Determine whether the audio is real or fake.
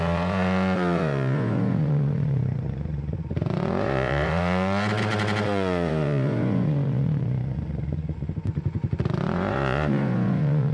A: fake